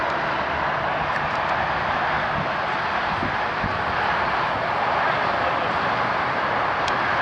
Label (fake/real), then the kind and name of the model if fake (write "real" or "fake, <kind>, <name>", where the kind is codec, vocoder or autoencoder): real